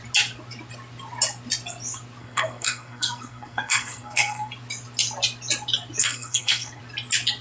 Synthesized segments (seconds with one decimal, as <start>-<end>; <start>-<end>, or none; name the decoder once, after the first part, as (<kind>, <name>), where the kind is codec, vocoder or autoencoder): 2.2-4.5 (codec, SNAC); 6.0-6.8